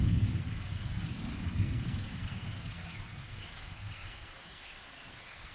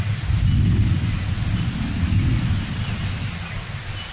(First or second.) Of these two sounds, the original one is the second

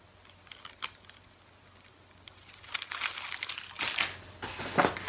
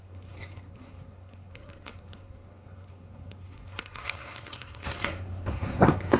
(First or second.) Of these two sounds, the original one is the first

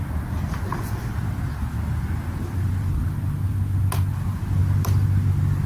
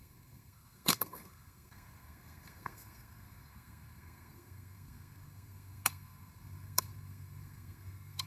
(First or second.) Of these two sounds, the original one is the first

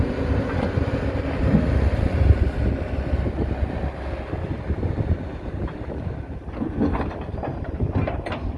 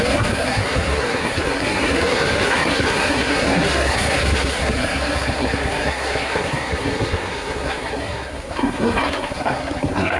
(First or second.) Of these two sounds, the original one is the first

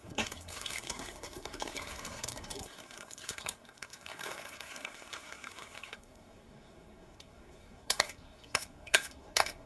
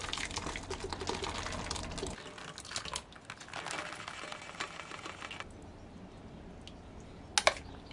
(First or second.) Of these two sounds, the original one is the second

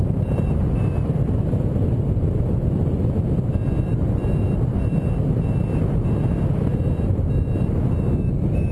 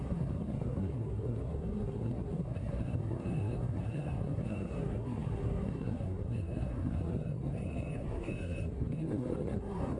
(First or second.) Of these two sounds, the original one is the first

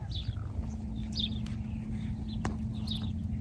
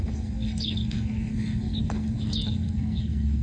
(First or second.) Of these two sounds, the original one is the first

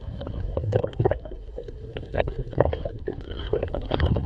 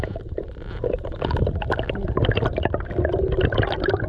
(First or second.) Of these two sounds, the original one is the second